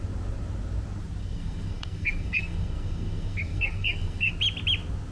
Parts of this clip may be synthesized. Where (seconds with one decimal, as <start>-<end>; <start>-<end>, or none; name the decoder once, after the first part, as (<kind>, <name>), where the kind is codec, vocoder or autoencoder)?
1.2-4.3 (codec, SNAC)